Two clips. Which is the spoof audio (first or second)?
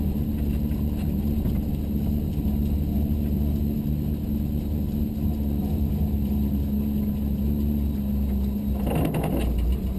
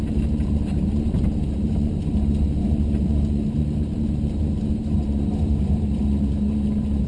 second